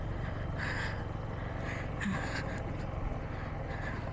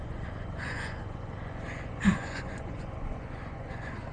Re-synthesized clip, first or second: second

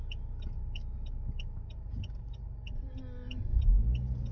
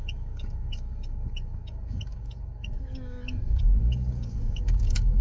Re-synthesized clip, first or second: second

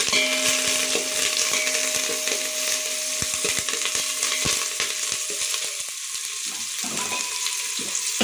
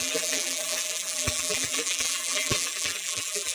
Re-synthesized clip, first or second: second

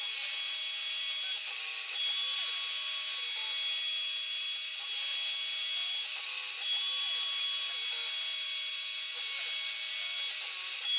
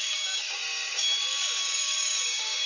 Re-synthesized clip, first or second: second